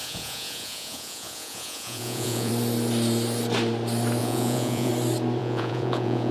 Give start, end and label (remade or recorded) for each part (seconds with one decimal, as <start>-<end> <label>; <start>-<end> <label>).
0.0-2.5 remade; 2.5-4.2 recorded; 4.2-4.9 remade; 4.9-5.4 recorded; 5.4-6.3 remade